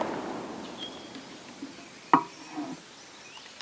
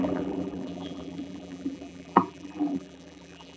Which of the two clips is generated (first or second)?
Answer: second